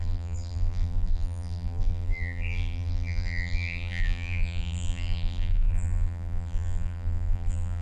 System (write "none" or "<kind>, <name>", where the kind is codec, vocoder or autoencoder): vocoder, BigVGAN v2